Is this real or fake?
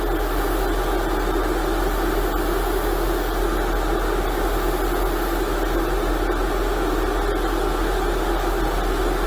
real